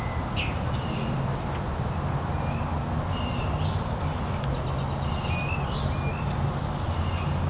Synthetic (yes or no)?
no